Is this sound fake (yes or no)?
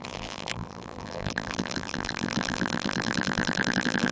yes